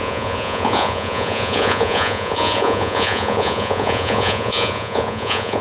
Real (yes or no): no